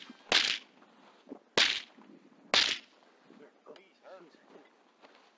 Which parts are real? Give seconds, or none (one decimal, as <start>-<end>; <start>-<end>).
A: 0.0-5.4